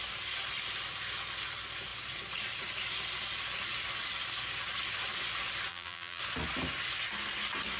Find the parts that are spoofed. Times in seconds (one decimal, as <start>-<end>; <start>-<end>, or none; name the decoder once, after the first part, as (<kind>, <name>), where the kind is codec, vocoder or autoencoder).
5.7-6.2 (vocoder, BigVGAN v2)